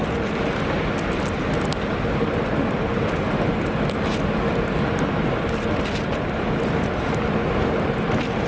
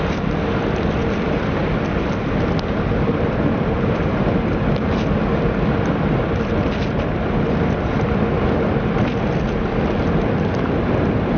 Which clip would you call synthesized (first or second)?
second